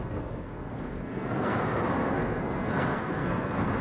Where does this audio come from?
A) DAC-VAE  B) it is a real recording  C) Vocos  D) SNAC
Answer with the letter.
D